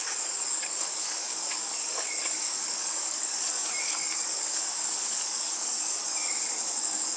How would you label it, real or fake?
fake